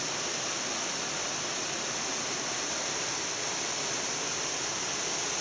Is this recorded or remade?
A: recorded